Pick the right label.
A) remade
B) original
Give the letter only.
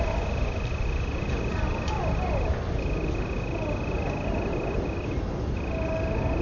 B